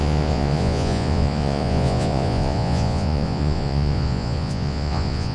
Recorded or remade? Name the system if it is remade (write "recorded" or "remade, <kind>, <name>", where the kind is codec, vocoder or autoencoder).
remade, vocoder, Vocos